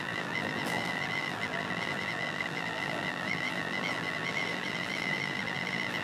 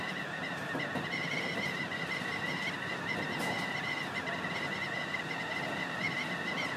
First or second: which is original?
second